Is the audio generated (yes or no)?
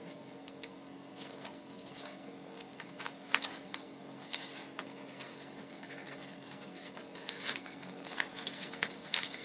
yes